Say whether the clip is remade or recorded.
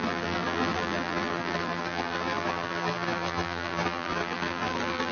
remade